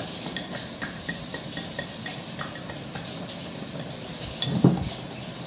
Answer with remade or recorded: recorded